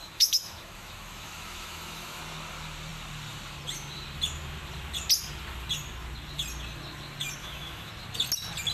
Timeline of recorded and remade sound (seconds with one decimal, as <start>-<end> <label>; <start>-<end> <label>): 0.0-2.2 remade; 2.2-7.4 recorded; 7.4-7.9 remade; 7.9-8.7 recorded

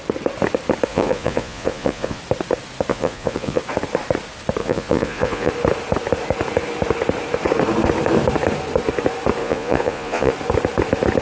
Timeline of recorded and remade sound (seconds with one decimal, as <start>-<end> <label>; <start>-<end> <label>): 0.0-0.9 recorded; 0.9-2.2 remade; 2.2-2.9 recorded; 2.9-3.6 remade; 3.6-4.6 recorded; 4.6-5.5 remade; 5.5-9.4 recorded; 9.4-10.3 remade; 10.3-11.2 recorded